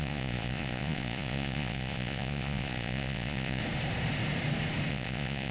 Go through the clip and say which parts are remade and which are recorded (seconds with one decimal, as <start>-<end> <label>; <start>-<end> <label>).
0.0-3.6 remade; 3.6-4.9 recorded; 4.9-5.5 remade